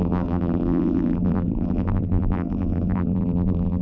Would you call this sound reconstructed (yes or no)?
yes